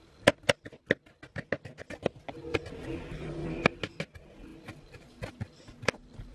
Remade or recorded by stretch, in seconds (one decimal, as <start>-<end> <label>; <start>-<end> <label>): 0.0-6.3 recorded